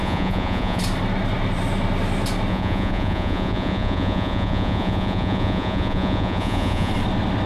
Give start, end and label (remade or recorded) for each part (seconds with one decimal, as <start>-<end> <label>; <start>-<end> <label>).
0.0-0.8 remade; 0.8-2.5 recorded; 2.5-6.9 remade; 6.9-7.5 recorded